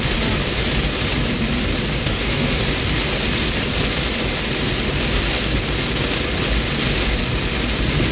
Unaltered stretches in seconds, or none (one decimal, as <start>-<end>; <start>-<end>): 0.0-2.0; 2.6-8.1